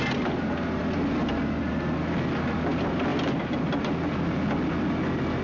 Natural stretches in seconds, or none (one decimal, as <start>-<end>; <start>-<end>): 0.0-5.4